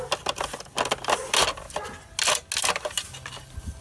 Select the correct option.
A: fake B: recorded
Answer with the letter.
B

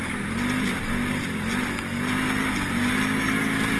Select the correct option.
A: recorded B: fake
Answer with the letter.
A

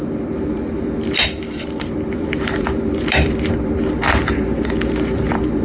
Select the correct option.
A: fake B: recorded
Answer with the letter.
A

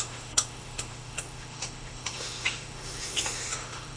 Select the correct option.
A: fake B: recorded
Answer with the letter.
A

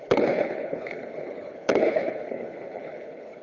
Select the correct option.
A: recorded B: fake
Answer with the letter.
B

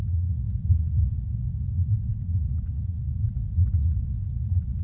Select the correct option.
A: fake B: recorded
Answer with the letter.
A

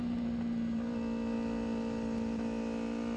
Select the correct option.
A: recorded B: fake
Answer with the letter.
A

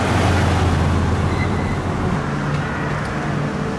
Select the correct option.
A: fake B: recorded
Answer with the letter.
B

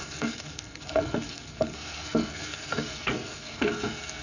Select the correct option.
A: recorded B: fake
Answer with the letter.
B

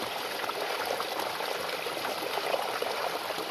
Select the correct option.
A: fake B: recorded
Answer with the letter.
B